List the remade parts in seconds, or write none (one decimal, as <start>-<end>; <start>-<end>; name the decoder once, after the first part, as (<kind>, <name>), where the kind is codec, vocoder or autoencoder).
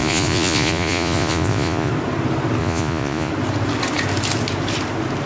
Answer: 0.0-1.9 (vocoder, Vocos); 2.6-3.3